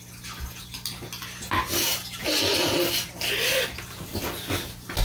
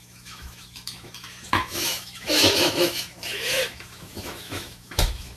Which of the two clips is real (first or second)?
first